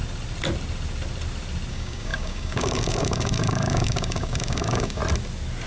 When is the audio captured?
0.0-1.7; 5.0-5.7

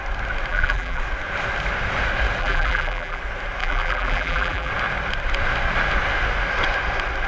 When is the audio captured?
0.0-0.5; 1.0-2.4; 3.2-3.6; 4.7-7.3

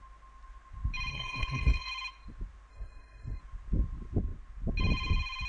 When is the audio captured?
0.0-1.1; 1.9-2.7; 3.4-5.5

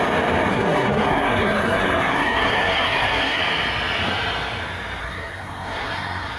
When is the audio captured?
0.0-0.5; 3.4-5.0

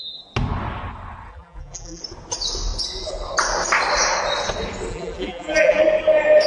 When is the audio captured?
0.0-1.3; 2.0-4.9; 5.8-6.5

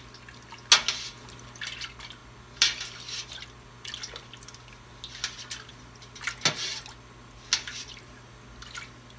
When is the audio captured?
0.0-9.2

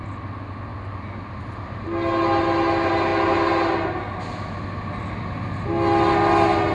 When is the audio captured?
0.0-6.7